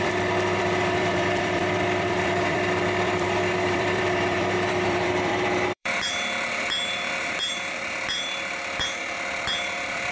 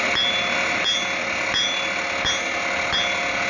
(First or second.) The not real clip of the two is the first